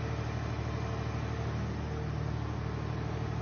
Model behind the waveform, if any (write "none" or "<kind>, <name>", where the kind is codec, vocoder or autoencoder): none